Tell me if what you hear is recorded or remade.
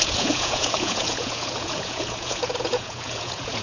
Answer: remade